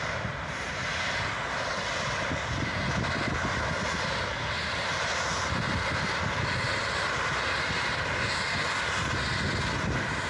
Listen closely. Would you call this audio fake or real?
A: real